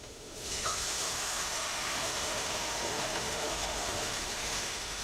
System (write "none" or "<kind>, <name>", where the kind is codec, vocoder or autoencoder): autoencoder, DAC-VAE